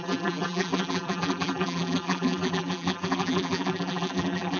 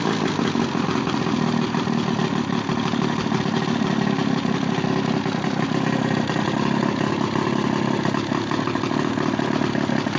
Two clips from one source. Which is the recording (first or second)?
second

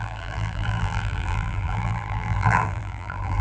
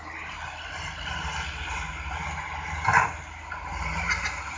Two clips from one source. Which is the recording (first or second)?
second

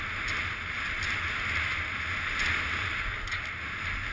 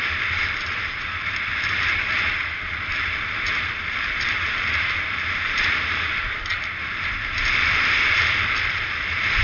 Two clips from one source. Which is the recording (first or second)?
first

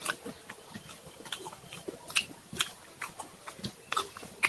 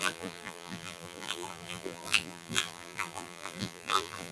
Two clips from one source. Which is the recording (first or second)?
first